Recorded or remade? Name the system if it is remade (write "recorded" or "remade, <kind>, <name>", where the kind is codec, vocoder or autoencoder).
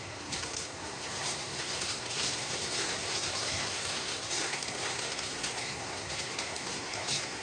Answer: remade, codec, SNAC